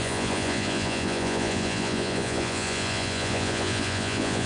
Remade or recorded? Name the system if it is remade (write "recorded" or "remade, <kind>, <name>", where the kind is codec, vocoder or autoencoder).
remade, vocoder, Vocos